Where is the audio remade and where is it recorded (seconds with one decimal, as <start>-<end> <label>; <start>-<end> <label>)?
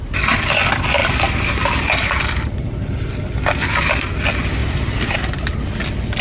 0.0-1.0 recorded; 1.0-2.8 remade; 2.8-4.6 recorded; 4.6-5.5 remade; 5.5-6.2 recorded